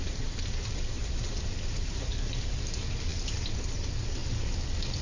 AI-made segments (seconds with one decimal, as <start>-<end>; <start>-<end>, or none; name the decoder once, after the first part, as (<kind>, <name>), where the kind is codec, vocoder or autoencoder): 0.0-2.7 (vocoder, BigVGAN v2)